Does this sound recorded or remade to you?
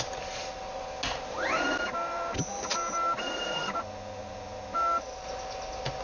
recorded